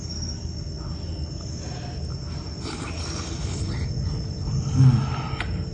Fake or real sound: real